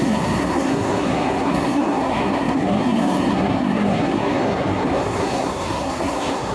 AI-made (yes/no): yes